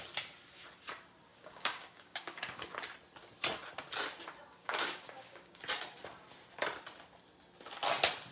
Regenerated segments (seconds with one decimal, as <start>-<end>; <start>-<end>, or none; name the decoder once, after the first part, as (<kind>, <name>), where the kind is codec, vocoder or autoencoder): 1.3-2.6 (codec, DAC); 4.6-5.6